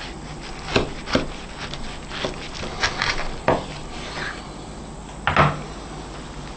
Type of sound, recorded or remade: recorded